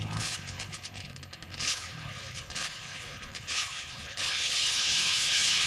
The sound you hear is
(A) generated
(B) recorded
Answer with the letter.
A